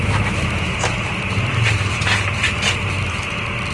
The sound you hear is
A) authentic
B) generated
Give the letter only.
A